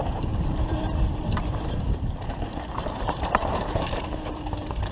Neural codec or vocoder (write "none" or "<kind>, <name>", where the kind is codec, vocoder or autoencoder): vocoder, BigVGAN v2